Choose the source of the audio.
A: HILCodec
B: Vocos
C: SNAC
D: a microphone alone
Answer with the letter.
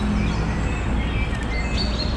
D